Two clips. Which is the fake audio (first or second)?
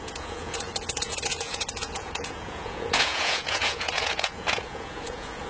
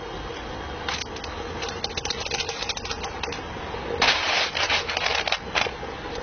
first